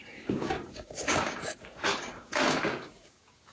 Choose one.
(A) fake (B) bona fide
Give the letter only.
A